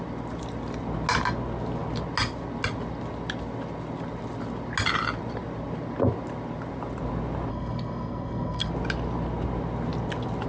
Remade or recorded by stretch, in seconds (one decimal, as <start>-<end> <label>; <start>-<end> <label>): 0.0-7.5 recorded; 7.5-8.7 remade; 8.7-10.5 recorded